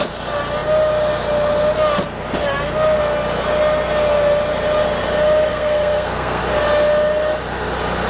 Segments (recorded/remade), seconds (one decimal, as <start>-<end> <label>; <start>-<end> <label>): 0.0-5.5 recorded; 5.5-6.4 remade; 6.4-8.1 recorded